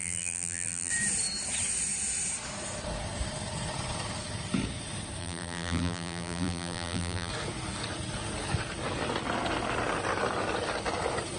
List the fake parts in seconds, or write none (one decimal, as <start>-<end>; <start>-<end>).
0.0-0.9; 5.2-7.3